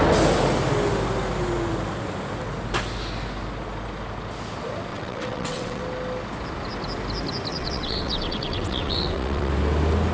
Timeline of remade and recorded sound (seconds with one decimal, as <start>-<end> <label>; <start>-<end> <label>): 0.0-4.9 recorded; 4.9-5.8 remade; 5.8-7.5 recorded; 7.5-9.5 remade; 9.5-10.1 recorded